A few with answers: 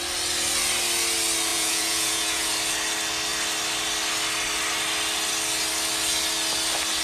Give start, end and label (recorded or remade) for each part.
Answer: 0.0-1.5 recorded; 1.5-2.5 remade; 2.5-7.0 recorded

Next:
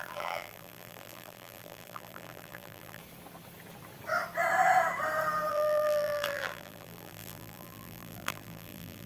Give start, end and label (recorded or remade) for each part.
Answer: 0.0-3.0 remade; 3.0-5.5 recorded; 5.5-9.1 remade

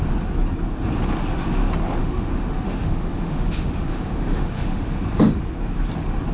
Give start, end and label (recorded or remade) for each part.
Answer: 0.0-2.0 recorded; 2.0-5.0 remade; 5.0-6.3 recorded

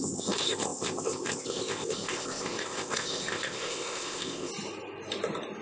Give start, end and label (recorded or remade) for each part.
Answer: 0.0-4.5 remade; 4.5-5.6 recorded

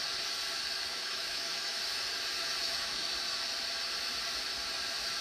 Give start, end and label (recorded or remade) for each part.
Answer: 0.0-0.9 recorded; 0.9-1.8 remade; 1.8-2.6 recorded; 2.6-3.1 remade; 3.1-5.2 recorded

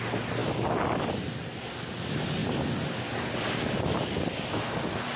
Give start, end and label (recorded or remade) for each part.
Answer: 0.0-5.2 recorded

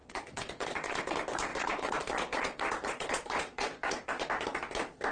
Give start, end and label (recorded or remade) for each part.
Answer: 0.0-1.1 remade; 1.1-1.5 recorded; 1.5-4.3 remade; 4.3-5.1 recorded

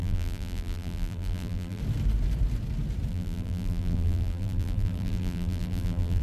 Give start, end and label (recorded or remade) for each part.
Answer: 0.0-1.8 remade; 1.8-3.1 recorded; 3.1-6.2 remade